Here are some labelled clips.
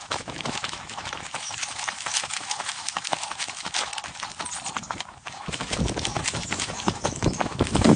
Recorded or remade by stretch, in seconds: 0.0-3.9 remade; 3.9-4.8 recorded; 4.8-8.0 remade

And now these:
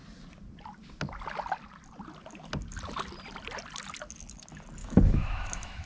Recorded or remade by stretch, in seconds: 0.0-4.8 recorded; 4.8-5.9 remade

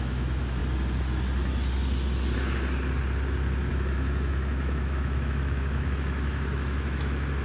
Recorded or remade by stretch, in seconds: 0.0-0.6 remade; 0.6-3.7 recorded; 3.7-7.4 remade

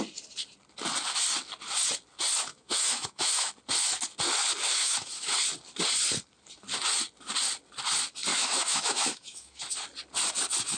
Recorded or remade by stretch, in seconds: 0.0-2.5 recorded; 2.5-3.5 remade; 3.5-4.7 recorded; 4.7-5.3 remade; 5.3-8.3 recorded; 8.3-9.6 remade; 9.6-10.8 recorded

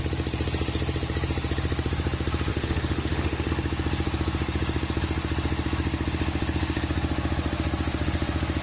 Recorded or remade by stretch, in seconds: 0.0-2.5 recorded; 2.5-3.5 remade; 3.5-8.6 recorded

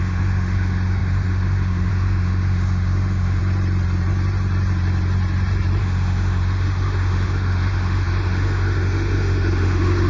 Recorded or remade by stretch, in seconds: 0.0-3.4 remade; 3.4-5.8 recorded; 5.8-10.1 remade

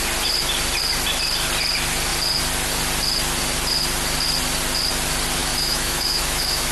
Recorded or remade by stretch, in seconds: 0.0-5.4 recorded; 5.4-6.7 remade